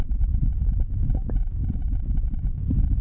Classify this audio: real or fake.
fake